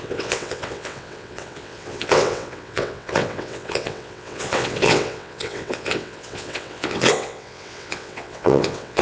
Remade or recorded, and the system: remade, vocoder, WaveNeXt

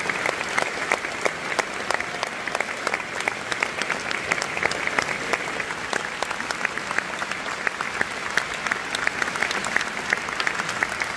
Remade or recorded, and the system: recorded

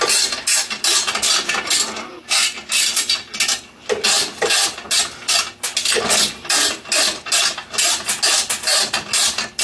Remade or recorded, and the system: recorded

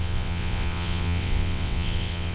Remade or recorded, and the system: remade, vocoder, WaveNeXt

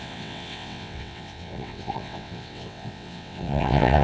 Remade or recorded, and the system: remade, vocoder, WaveNeXt